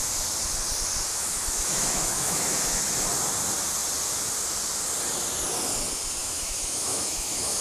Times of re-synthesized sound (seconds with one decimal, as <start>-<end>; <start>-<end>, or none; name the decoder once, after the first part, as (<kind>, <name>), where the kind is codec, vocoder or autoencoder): 1.1-2.8 (autoencoder, DAC-VAE); 6.2-7.6